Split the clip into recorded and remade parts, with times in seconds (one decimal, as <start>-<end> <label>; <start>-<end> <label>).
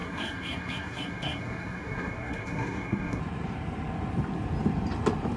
0.0-3.2 remade; 3.2-5.4 recorded